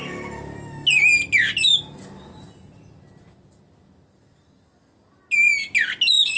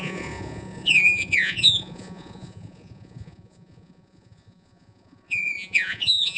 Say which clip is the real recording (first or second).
first